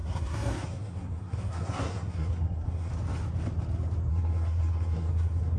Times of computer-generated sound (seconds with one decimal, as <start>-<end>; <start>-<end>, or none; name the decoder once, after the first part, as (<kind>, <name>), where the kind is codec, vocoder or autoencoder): 0.0-2.9 (codec, SNAC); 4.1-5.6